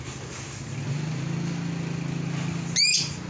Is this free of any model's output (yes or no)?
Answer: yes